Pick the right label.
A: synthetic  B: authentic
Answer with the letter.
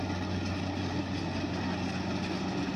B